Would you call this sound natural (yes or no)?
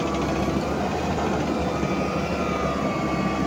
yes